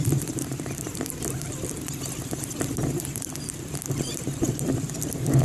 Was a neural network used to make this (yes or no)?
yes